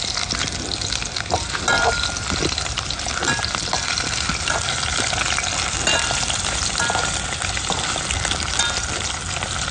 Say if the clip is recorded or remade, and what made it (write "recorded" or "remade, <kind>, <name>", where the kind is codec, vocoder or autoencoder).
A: recorded